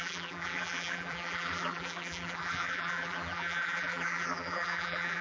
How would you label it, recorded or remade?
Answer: remade